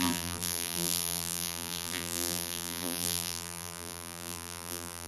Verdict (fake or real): fake